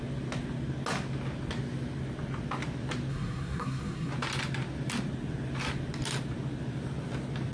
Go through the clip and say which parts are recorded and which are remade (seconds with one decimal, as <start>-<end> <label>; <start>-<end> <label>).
0.0-3.1 recorded; 3.1-4.1 remade; 4.1-7.5 recorded